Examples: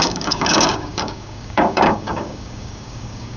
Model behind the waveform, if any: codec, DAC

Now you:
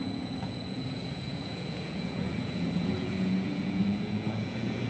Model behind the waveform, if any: vocoder, Vocos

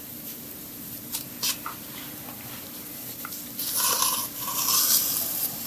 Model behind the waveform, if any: vocoder, BigVGAN v2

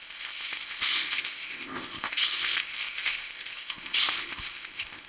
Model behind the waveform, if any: codec, ZipCodec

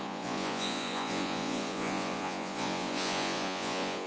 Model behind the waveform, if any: vocoder, Vocos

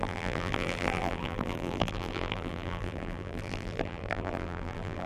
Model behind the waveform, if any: vocoder, BigVGAN v2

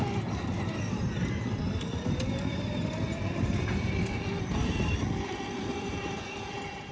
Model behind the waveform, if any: none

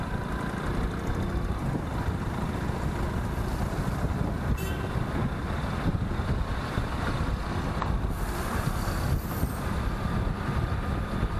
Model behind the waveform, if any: none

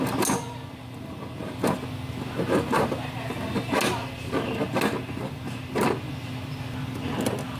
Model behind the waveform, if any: none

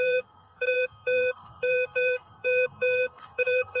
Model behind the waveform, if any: codec, SNAC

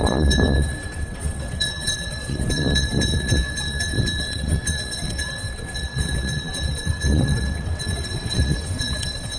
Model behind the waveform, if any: vocoder, WaveNeXt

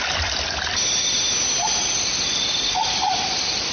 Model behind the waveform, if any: none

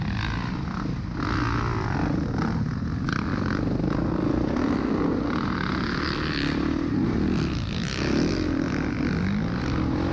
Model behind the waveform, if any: none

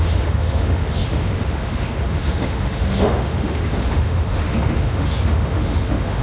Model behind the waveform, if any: autoencoder, DAC-VAE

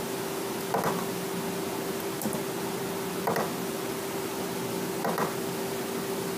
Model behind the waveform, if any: none